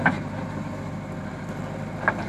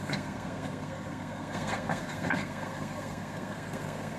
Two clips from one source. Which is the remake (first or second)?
second